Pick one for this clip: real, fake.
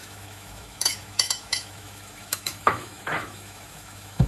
fake